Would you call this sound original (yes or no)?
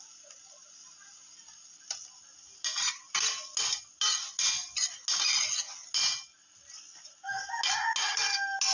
yes